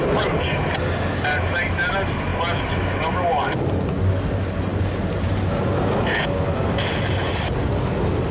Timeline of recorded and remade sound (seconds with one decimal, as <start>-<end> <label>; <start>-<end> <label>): 0.0-8.3 recorded